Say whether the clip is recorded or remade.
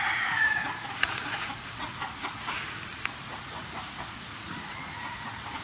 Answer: remade